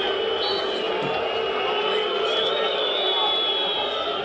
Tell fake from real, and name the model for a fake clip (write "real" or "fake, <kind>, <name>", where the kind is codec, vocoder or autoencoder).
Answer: real